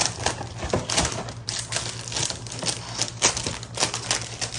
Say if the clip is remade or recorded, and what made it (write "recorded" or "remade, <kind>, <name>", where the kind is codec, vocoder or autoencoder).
recorded